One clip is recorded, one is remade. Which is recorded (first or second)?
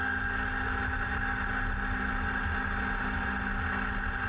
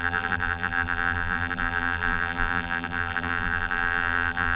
first